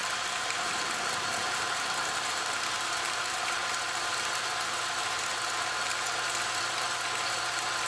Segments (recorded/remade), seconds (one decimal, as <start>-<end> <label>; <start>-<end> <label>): 0.0-3.6 remade; 3.6-7.9 recorded